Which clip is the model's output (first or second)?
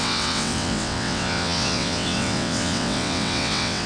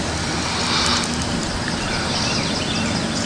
first